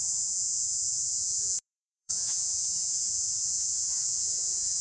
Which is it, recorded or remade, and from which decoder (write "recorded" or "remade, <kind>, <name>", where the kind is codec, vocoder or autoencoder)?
remade, vocoder, Vocos